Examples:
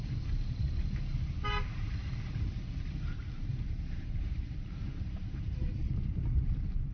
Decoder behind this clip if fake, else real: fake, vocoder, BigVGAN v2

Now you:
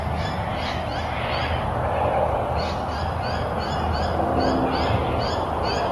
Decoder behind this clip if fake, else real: real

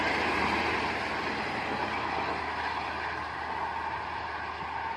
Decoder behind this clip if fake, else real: real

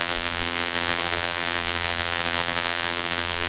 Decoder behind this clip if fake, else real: fake, vocoder, BigVGAN v2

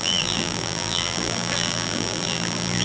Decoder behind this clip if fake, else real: fake, vocoder, BigVGAN v2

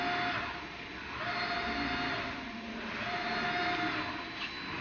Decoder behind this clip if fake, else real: real